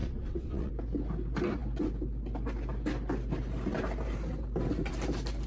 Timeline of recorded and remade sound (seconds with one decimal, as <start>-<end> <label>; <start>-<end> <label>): 0.0-0.7 remade; 0.7-5.5 recorded